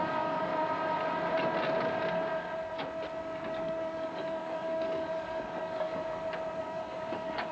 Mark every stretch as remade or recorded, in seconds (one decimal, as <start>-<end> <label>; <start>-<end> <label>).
0.0-0.5 remade; 0.5-3.2 recorded; 3.2-5.9 remade; 5.9-6.6 recorded; 6.6-7.5 remade